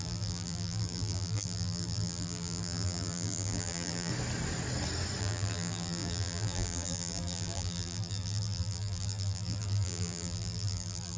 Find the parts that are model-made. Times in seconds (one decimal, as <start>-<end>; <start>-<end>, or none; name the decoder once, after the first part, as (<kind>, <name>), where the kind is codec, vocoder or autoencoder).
0.0-4.1 (vocoder, BigVGAN v2); 5.2-11.2